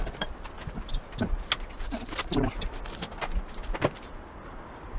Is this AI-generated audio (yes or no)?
no